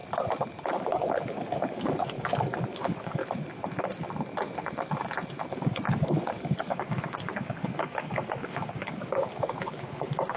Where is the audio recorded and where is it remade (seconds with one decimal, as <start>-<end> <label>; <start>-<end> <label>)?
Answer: 0.0-0.7 recorded; 0.7-3.2 remade; 3.2-5.5 recorded; 5.5-10.4 remade